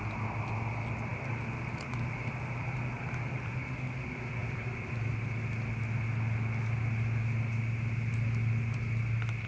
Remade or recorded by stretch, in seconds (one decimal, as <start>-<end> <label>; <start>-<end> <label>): 0.0-1.1 recorded; 1.1-3.5 remade; 3.5-4.4 recorded; 4.4-5.1 remade; 5.1-9.5 recorded